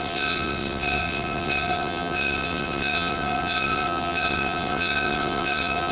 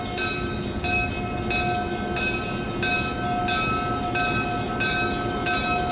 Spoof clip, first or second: first